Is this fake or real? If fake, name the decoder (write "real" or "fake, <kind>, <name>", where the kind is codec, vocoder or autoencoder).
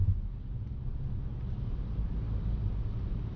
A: real